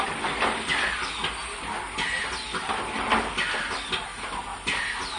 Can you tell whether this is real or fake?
real